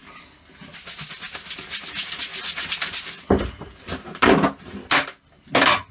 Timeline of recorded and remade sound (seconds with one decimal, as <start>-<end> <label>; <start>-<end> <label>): 0.0-5.9 recorded